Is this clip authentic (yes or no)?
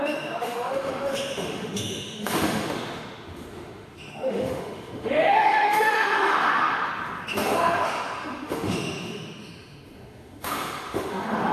no